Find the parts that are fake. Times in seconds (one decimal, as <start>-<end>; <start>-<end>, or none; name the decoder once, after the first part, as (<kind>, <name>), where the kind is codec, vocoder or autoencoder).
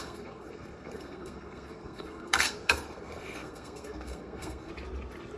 0.0-4.7 (codec, SNAC)